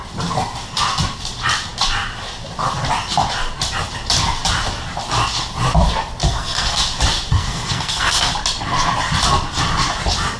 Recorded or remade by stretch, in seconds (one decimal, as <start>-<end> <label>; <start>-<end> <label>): 0.0-6.2 recorded; 6.2-6.8 remade; 6.8-7.3 recorded; 7.3-8.3 remade; 8.3-10.4 recorded